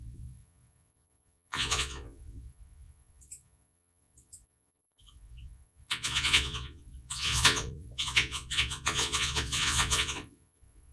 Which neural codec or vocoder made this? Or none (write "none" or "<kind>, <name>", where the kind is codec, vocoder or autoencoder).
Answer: vocoder, Vocos